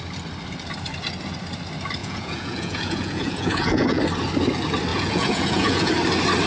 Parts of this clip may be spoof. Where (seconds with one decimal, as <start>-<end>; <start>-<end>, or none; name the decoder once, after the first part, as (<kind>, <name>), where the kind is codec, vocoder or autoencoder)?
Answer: 2.0-4.0 (vocoder, Vocos); 4.9-5.9